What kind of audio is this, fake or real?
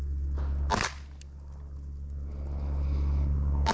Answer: real